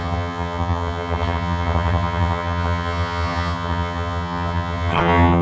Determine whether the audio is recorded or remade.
remade